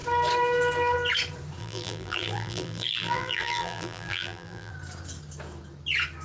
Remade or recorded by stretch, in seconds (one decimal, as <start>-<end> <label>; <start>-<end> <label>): 0.0-1.6 recorded; 1.6-4.7 remade; 4.7-6.2 recorded